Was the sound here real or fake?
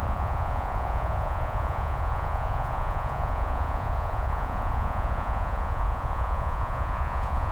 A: fake